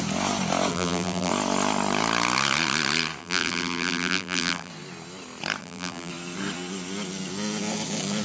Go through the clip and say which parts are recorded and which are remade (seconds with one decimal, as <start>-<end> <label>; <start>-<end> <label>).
0.0-0.7 recorded; 0.7-1.3 remade; 1.3-3.2 recorded; 3.2-4.7 remade; 4.7-5.6 recorded; 5.6-6.1 remade; 6.1-8.2 recorded

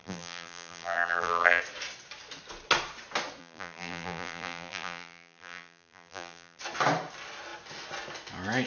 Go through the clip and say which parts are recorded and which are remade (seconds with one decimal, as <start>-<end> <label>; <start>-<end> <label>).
0.0-1.6 remade; 1.6-3.4 recorded; 3.4-6.6 remade; 6.6-8.7 recorded